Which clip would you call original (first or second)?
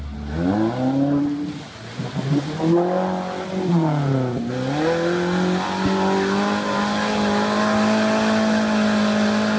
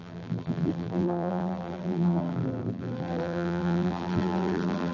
first